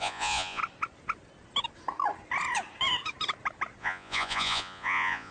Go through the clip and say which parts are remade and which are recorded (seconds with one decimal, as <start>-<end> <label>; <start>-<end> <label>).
0.0-0.6 remade; 0.6-3.8 recorded; 3.8-5.3 remade